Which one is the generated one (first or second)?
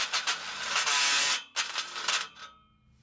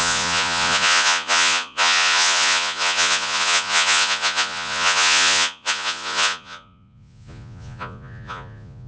second